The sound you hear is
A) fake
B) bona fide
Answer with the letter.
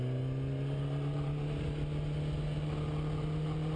B